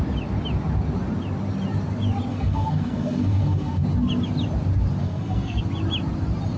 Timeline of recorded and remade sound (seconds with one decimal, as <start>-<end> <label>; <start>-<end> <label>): 0.0-2.3 recorded; 2.3-3.8 remade; 3.8-5.0 recorded; 5.0-5.6 remade; 5.6-6.6 recorded